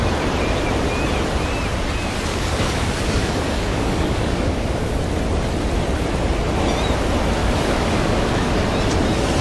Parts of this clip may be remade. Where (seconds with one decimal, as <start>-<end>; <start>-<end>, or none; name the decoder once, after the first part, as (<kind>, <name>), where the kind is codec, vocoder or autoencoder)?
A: 2.3-5.0 (codec, DAC); 7.4-8.5